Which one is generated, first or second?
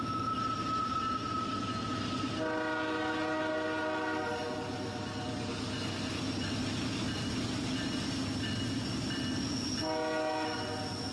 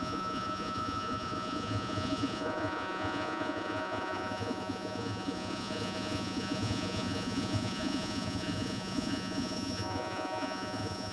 second